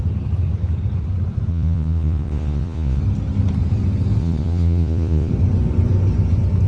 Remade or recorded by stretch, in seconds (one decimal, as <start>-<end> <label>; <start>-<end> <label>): 0.0-1.5 recorded; 1.5-3.0 remade; 3.0-4.2 recorded; 4.2-5.3 remade; 5.3-6.7 recorded